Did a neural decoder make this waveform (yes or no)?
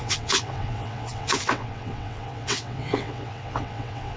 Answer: yes